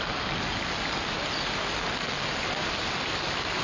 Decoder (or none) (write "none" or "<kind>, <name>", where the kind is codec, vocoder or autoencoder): none